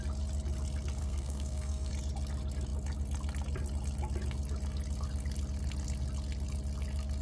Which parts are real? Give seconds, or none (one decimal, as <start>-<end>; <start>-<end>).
0.0-1.0; 1.9-7.2